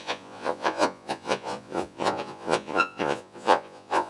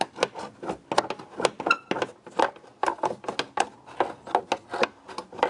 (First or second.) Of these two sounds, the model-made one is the first